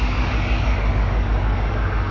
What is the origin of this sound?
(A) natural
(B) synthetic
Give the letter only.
B